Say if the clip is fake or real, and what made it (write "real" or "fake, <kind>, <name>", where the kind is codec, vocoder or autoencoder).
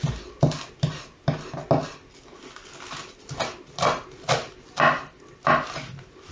real